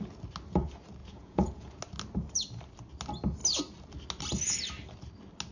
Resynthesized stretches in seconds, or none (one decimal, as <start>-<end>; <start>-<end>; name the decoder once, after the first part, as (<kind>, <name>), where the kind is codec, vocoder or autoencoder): 1.0-1.8 (vocoder, Vocos)